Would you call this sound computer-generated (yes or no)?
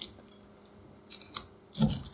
no